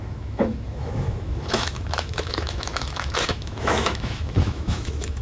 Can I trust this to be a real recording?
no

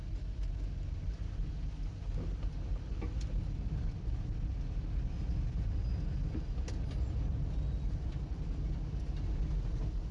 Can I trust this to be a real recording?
yes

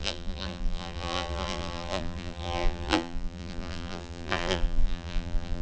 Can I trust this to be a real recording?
no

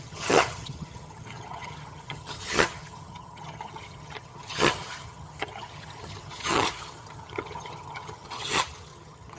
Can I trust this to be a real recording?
no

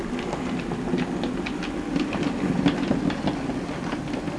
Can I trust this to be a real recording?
yes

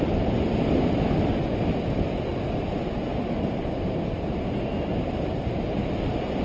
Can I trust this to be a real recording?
yes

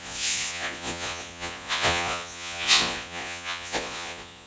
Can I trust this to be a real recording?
no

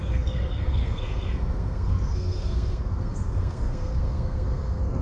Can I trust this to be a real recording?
no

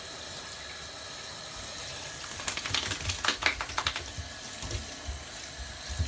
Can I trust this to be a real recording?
yes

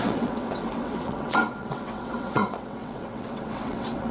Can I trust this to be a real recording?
no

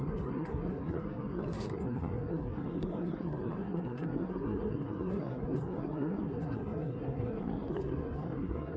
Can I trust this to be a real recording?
no